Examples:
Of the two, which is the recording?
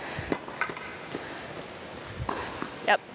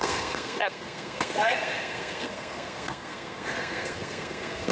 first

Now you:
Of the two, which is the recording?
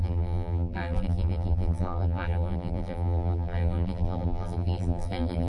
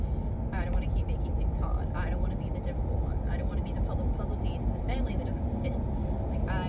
second